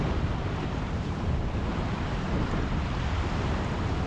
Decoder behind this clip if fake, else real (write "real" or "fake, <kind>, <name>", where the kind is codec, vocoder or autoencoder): fake, vocoder, BigVGAN v2